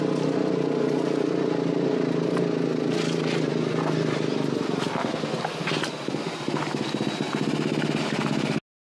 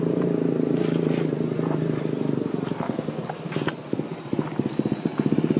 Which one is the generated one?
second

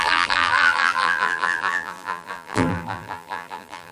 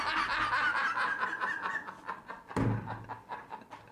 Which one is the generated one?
first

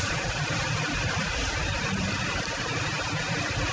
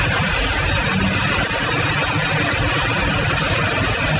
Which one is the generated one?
first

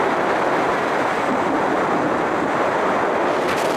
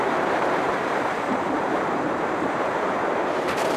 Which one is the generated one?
second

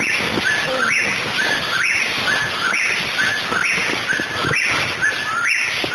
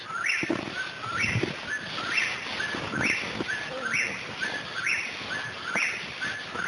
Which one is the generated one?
second